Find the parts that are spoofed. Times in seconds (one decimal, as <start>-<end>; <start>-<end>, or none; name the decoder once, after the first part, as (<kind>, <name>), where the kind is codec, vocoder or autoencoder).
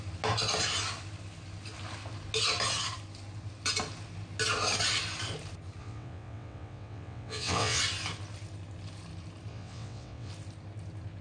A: 5.8-7.8 (vocoder, WaveNeXt); 9.5-10.3